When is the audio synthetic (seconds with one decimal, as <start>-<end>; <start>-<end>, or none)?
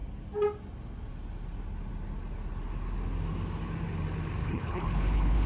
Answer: 4.4-5.5